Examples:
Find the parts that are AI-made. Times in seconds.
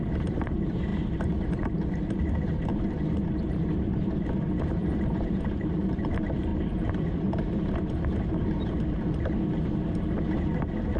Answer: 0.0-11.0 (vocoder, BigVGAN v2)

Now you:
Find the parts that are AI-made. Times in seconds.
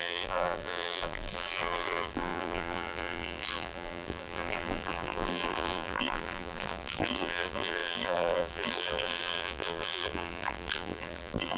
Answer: 0.0-11.6 (vocoder, BigVGAN v2)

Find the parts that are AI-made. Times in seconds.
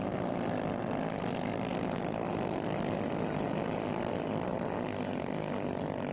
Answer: none